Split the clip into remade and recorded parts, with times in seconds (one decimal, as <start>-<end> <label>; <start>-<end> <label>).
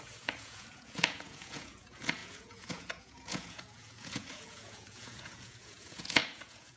0.0-6.8 remade